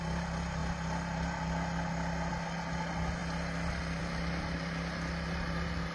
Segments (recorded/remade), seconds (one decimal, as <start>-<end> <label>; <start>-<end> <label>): 0.0-5.9 recorded